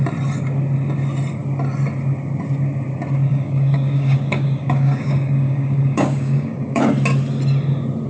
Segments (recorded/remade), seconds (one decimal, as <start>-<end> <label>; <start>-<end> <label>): 0.0-3.3 recorded; 3.3-6.9 remade; 6.9-8.1 recorded